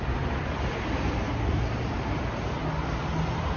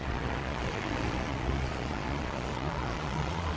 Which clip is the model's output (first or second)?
second